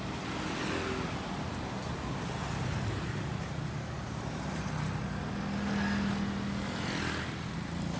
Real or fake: real